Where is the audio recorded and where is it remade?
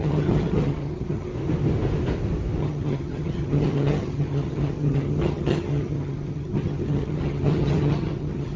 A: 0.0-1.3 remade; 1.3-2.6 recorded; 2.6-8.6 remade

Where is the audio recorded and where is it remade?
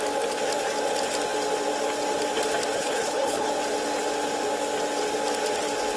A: 0.0-2.8 recorded; 2.8-3.5 remade; 3.5-6.0 recorded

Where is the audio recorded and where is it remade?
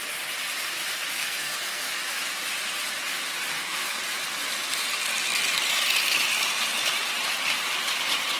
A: 0.0-1.2 recorded; 1.2-1.9 remade; 1.9-3.5 recorded; 3.5-4.0 remade; 4.0-8.4 recorded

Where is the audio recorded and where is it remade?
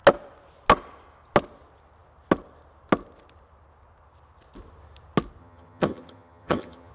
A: 0.0-5.4 recorded; 5.4-6.9 remade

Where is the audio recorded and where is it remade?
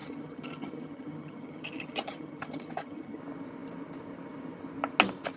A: 0.0-3.2 remade; 3.2-5.4 recorded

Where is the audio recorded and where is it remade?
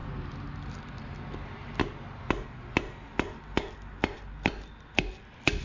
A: 0.0-5.6 recorded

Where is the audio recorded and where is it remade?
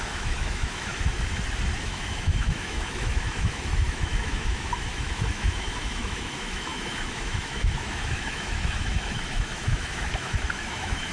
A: 0.0-0.9 remade; 0.9-1.8 recorded; 1.8-11.1 remade